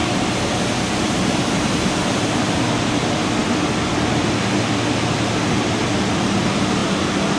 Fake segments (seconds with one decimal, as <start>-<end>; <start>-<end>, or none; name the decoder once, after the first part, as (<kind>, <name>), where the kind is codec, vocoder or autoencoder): 0.0-3.0 (vocoder, BigVGAN v2)